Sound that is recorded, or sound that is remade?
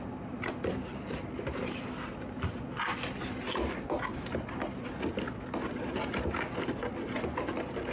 recorded